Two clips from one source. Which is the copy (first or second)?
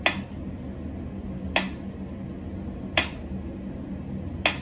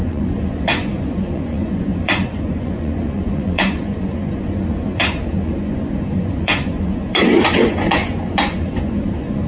second